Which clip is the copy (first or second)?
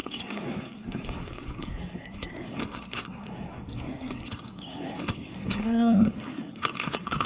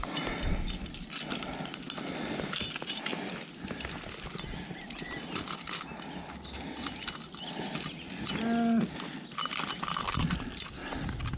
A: first